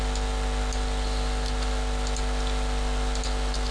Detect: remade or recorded recorded